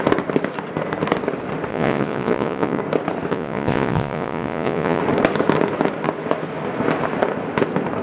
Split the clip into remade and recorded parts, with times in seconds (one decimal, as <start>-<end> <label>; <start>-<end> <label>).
0.0-1.7 recorded; 1.7-2.8 remade; 2.8-3.3 recorded; 3.3-5.0 remade; 5.0-8.0 recorded